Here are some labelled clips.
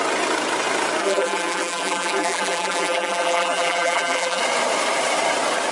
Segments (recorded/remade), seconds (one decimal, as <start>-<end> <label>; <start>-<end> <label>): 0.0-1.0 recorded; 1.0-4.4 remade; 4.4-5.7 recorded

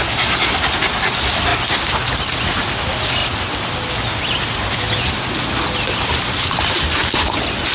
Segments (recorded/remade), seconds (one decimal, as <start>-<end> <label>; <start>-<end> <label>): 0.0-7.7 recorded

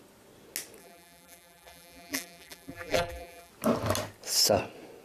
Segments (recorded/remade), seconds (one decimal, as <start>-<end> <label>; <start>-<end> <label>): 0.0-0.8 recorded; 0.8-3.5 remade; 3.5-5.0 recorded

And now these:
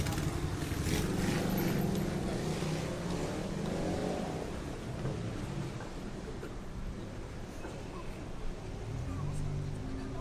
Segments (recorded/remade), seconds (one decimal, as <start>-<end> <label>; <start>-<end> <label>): 0.0-4.0 recorded; 4.0-7.8 remade; 7.8-10.2 recorded